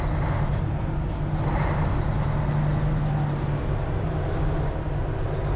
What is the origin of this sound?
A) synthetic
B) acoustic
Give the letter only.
B